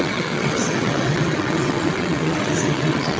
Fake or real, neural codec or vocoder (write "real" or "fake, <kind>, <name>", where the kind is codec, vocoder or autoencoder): fake, vocoder, WaveNeXt